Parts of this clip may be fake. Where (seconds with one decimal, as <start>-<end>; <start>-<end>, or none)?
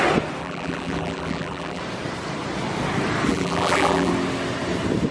0.4-1.8; 3.3-4.1